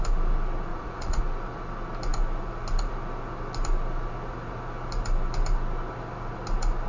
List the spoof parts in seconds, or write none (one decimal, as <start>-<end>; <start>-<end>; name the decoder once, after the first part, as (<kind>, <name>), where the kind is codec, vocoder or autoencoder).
0.7-1.2 (vocoder, Vocos)